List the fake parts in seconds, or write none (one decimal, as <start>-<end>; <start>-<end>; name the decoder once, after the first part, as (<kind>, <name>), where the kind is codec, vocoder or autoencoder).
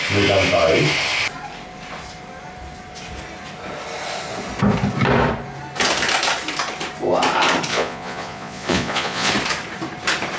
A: 7.7-9.3 (vocoder, Vocos)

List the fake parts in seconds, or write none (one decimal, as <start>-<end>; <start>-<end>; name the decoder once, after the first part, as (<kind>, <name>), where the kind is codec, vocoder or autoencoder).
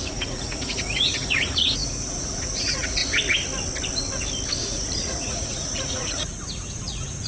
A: 0.0-3.0 (vocoder, Vocos); 4.6-7.3